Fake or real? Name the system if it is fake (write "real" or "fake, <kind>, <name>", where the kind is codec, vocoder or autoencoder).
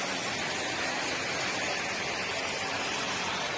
real